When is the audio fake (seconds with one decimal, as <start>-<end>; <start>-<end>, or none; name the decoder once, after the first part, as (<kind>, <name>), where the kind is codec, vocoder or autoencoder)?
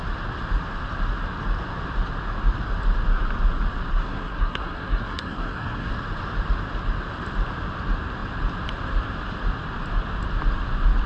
3.9-5.9 (codec, SNAC)